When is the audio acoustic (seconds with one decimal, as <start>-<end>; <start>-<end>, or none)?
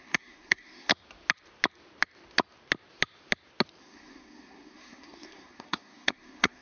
0.9-3.8